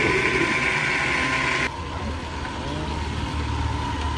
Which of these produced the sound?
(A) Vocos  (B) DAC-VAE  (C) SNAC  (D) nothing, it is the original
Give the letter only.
D